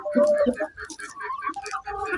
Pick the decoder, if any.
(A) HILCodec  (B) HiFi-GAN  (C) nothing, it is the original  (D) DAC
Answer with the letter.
C